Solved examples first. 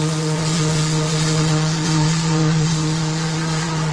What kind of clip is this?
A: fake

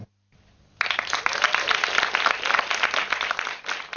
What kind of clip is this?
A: real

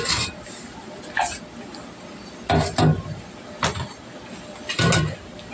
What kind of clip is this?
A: real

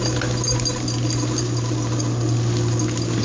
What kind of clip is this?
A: real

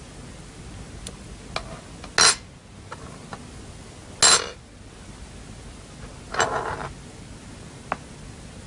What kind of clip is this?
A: real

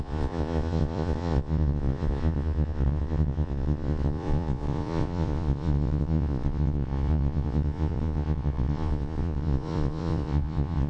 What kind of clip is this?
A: fake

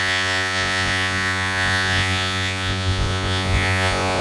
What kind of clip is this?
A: fake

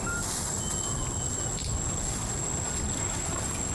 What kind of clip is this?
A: real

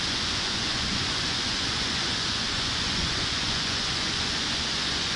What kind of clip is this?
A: fake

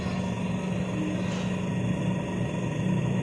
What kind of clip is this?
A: real